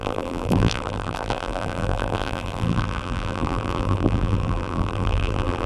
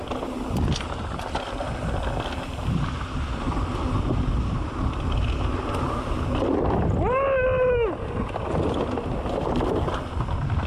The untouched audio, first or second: second